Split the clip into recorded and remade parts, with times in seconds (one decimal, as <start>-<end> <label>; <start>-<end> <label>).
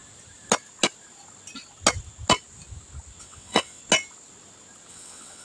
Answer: 0.0-3.2 recorded; 3.2-3.8 remade; 3.8-4.9 recorded; 4.9-5.4 remade